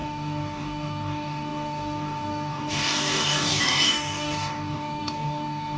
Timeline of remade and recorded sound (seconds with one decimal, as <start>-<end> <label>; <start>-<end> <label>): 0.0-5.8 remade